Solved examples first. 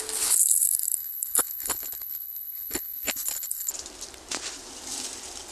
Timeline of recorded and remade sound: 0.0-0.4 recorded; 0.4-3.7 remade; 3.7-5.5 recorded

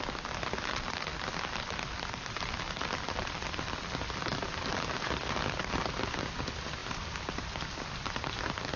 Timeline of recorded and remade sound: 0.0-8.8 recorded

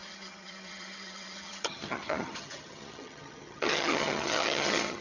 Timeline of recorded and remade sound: 0.0-5.0 remade

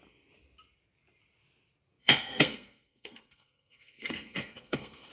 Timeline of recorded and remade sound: 0.0-2.0 recorded; 2.0-5.1 remade

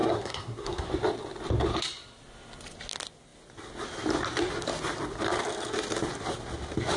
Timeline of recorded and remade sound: 0.0-0.9 remade; 0.9-7.0 recorded

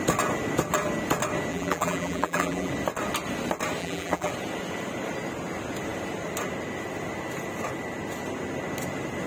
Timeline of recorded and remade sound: 0.0-1.5 recorded; 1.5-2.7 remade; 2.7-3.8 recorded; 3.8-4.3 remade; 4.3-9.3 recorded